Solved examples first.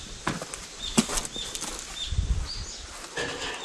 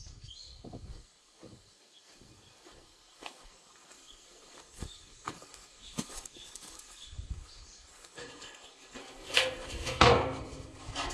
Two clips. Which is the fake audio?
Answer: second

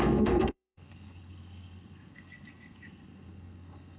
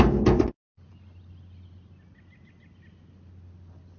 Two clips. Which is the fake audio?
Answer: first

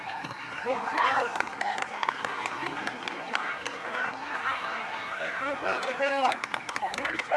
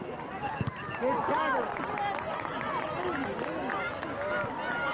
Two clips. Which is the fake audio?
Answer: first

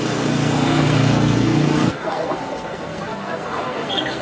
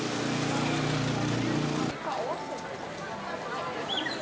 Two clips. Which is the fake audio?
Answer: first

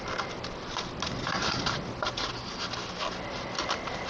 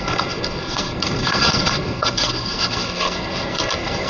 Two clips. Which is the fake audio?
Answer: second